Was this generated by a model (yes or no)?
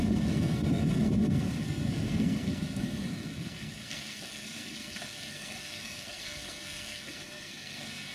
yes